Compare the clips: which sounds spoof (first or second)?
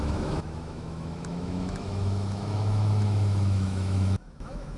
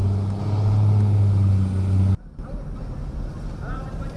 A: first